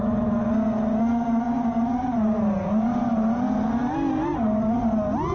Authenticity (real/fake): real